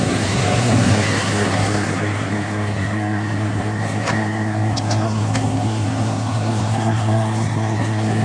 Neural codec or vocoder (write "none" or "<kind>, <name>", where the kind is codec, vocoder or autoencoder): codec, SNAC